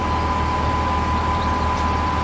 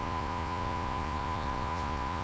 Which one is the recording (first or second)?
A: first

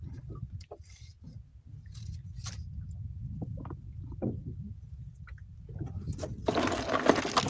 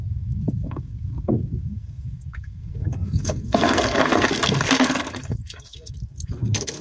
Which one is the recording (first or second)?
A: first